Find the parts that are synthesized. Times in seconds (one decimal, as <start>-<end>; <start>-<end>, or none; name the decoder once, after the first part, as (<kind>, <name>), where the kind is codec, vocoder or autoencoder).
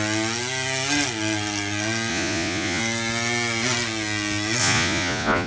2.1-2.8 (vocoder, Vocos); 4.6-5.5